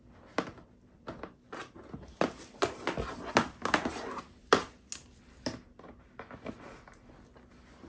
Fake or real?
real